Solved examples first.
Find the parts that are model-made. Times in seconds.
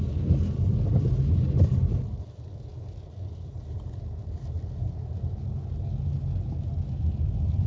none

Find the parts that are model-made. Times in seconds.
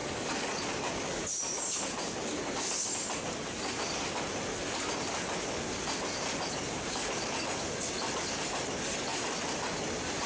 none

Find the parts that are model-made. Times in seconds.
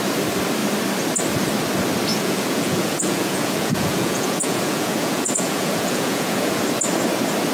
2.1-6.6